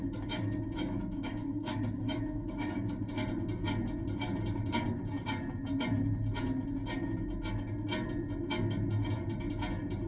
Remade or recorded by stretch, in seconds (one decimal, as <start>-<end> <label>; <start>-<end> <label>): 0.0-3.0 remade; 3.0-10.1 recorded